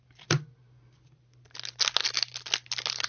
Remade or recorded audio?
recorded